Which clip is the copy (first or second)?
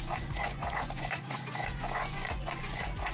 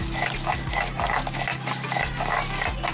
first